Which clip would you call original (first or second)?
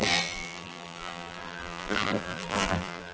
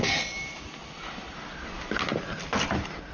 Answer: second